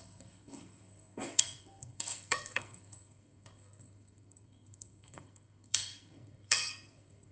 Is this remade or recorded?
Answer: remade